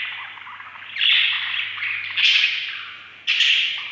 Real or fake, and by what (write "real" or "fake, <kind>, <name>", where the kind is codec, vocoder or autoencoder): real